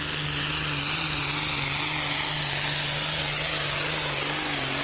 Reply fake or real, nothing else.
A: real